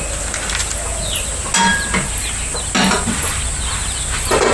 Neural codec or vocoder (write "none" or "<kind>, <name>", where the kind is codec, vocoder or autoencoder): none